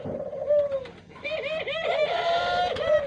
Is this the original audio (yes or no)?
yes